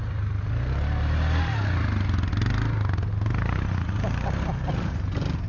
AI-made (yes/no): no